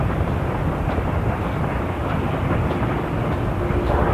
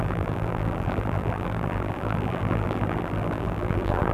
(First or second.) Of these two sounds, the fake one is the second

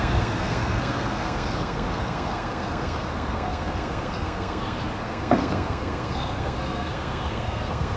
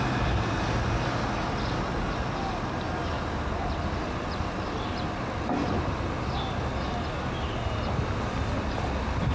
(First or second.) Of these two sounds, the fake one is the first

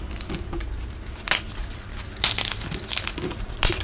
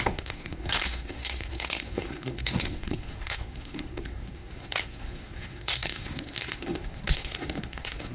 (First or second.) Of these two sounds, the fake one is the second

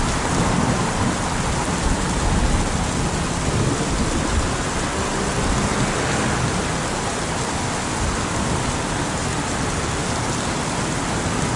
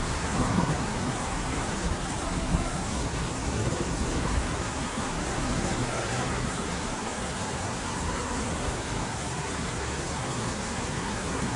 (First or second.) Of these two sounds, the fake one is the second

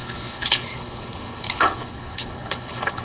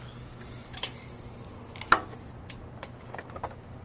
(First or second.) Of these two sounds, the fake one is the first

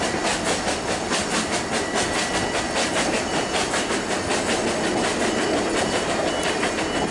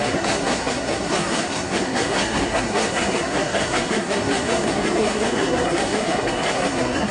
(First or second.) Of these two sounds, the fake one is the second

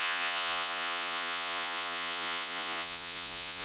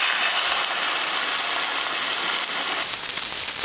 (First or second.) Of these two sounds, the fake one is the first